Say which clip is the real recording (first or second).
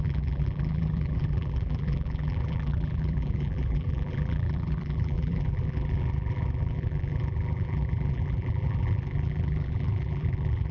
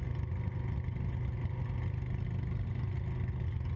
second